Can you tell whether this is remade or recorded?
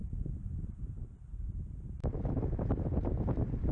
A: remade